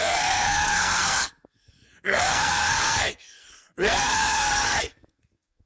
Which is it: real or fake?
fake